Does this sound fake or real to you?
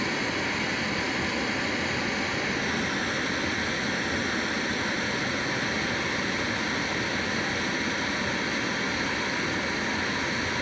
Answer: real